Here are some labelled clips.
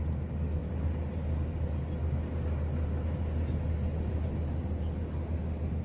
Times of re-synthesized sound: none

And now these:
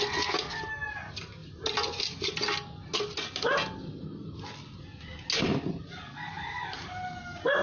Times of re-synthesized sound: none

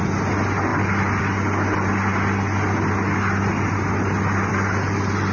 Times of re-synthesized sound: none

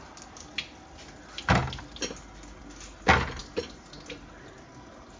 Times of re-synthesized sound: none